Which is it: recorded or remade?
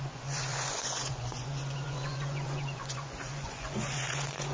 remade